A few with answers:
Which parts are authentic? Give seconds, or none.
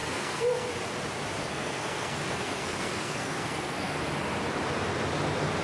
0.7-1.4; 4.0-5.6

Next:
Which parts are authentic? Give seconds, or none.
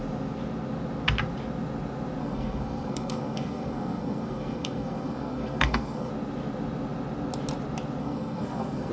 0.0-2.2; 6.1-8.0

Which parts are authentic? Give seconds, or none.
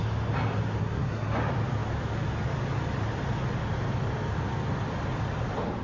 0.0-0.8; 1.4-5.8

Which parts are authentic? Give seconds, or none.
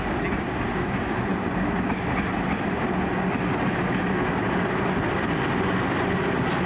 0.0-6.7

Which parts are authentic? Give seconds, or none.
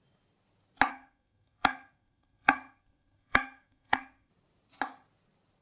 0.0-0.9; 4.3-5.6